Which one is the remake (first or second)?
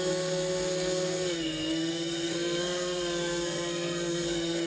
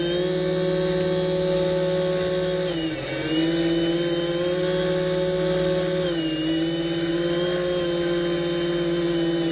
first